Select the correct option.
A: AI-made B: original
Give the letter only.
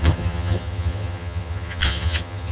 A